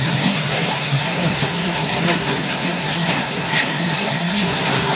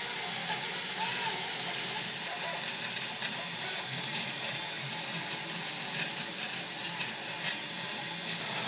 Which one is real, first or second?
second